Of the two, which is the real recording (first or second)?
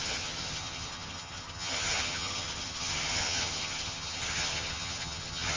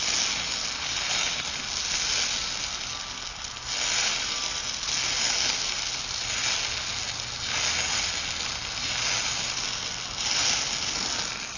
second